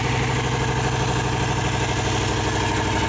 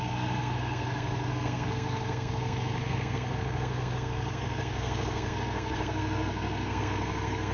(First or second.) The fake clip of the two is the second